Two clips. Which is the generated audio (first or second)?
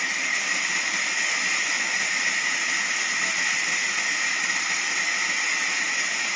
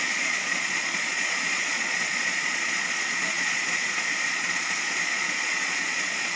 second